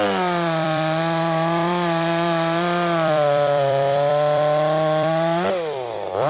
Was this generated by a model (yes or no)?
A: yes